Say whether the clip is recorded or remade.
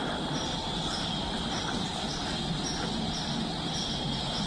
recorded